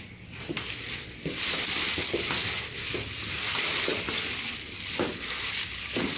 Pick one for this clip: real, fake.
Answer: real